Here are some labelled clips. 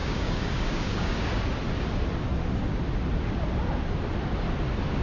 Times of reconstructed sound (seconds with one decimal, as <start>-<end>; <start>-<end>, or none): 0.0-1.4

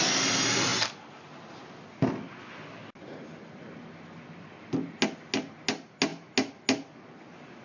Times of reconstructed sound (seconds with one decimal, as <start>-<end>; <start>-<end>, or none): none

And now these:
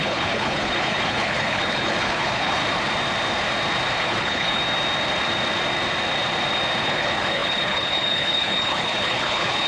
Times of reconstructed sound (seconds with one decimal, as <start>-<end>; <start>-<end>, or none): 0.0-2.6; 4.0-4.6; 6.8-9.7

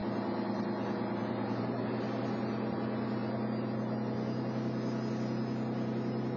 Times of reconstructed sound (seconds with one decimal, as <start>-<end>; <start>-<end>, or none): none